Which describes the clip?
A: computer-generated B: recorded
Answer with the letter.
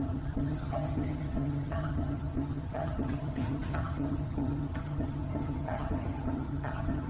A